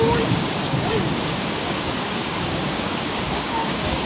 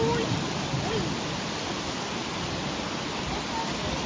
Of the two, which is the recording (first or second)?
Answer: second